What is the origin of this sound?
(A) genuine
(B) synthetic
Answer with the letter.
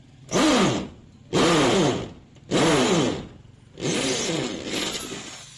A